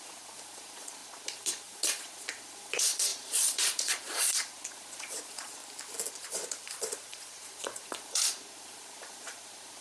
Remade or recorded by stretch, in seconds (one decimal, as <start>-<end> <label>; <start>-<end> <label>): 0.0-5.6 remade; 5.6-6.1 recorded; 6.1-9.8 remade

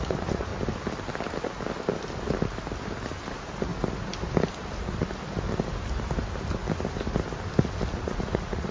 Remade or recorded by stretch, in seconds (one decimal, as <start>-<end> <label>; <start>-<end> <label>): 0.0-0.5 remade; 0.5-3.3 recorded; 3.3-3.7 remade; 3.7-8.0 recorded; 8.0-8.7 remade

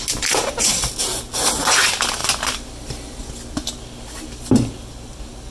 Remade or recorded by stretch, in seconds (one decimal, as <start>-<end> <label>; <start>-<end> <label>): 0.0-5.5 recorded